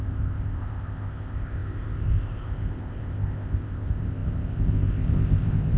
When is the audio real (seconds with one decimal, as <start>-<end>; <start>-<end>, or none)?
none